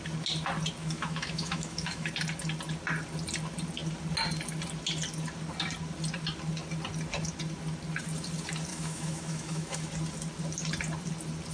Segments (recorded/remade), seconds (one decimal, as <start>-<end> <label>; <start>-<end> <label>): 0.0-0.8 recorded; 0.8-2.1 remade; 2.1-8.7 recorded; 8.7-9.9 remade; 9.9-11.5 recorded